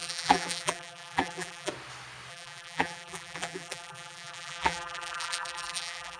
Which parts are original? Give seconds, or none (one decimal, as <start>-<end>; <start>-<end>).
1.7-2.3

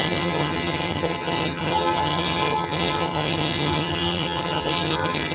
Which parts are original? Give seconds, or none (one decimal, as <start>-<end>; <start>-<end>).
none

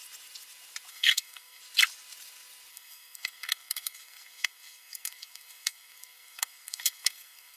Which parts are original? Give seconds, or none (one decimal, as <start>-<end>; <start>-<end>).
0.0-0.9; 1.6-2.7

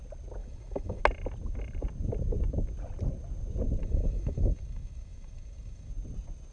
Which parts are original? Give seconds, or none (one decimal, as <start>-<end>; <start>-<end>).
0.0-0.4; 1.0-3.8; 5.9-6.5

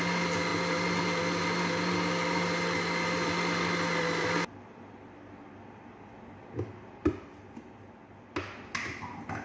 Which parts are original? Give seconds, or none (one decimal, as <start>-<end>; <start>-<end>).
0.0-9.4